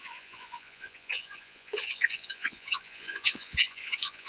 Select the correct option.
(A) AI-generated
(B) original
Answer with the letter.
A